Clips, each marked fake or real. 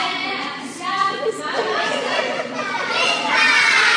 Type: fake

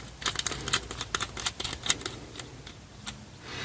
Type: real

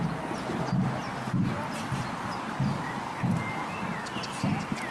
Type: real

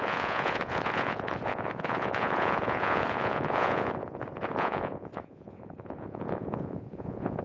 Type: fake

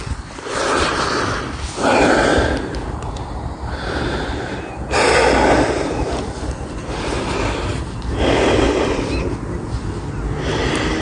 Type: real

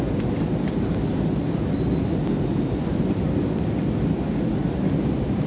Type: real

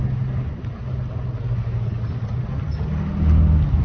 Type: real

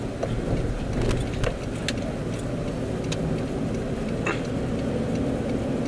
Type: real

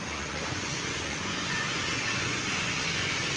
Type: fake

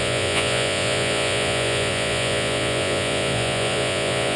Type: fake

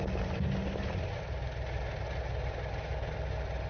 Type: real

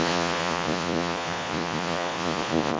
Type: fake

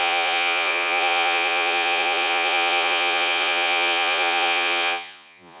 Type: fake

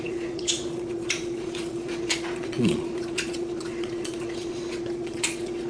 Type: fake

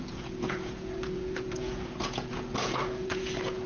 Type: fake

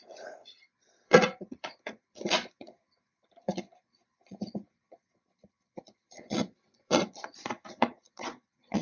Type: fake